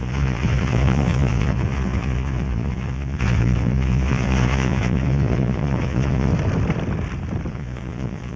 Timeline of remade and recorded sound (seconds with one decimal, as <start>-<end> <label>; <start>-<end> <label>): 0.0-6.3 remade; 6.3-7.5 recorded; 7.5-8.4 remade